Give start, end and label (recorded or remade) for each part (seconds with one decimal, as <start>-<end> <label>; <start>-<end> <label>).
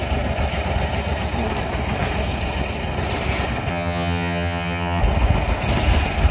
0.0-3.7 recorded; 3.7-5.0 remade; 5.0-6.3 recorded